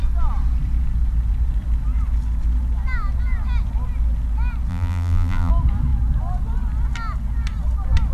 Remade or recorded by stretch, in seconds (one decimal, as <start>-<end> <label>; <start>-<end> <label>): 0.0-4.7 recorded; 4.7-5.5 remade; 5.5-8.1 recorded